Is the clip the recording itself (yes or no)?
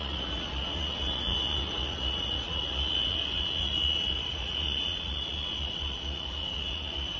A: no